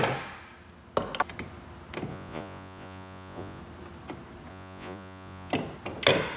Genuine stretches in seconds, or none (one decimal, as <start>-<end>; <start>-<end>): 0.0-2.1; 3.6-4.5; 5.5-6.4